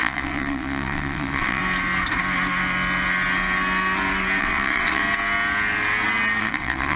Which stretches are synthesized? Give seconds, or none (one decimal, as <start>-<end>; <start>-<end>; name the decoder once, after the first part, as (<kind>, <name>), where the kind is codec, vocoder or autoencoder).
0.0-1.6 (vocoder, WaveNeXt); 4.4-5.0; 6.4-7.0